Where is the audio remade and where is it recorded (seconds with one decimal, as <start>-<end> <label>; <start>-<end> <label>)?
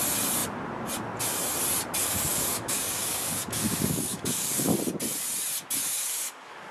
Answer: 0.0-2.0 recorded; 2.0-4.7 remade; 4.7-5.8 recorded; 5.8-6.7 remade